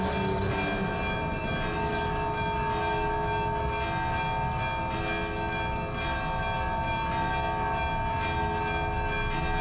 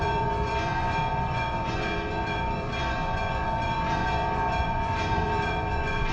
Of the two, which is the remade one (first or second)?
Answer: second